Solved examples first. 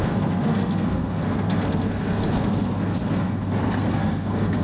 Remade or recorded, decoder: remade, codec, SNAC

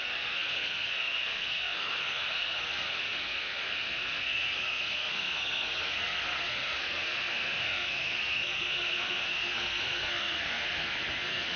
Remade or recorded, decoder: remade, codec, SNAC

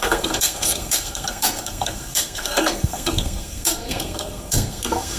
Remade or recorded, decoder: remade, codec, SNAC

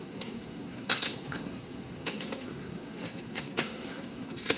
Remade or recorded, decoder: remade, codec, SNAC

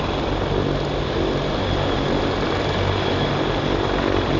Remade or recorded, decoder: recorded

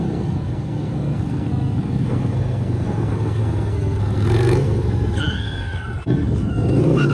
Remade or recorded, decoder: remade, codec, SNAC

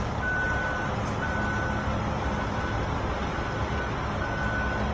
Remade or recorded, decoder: recorded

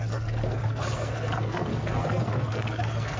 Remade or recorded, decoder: remade, codec, SNAC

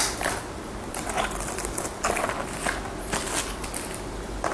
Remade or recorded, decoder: recorded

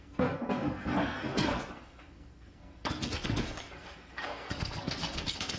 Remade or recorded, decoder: remade, codec, SNAC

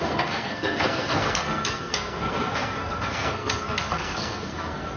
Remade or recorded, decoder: remade, codec, SNAC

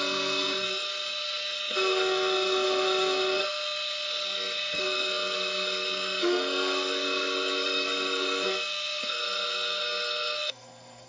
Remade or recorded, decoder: remade, codec, SNAC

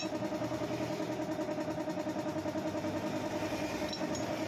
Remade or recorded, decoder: recorded